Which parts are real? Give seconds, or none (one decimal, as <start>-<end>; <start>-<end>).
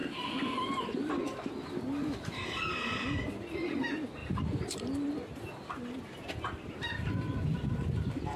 1.1-4.2; 5.1-8.4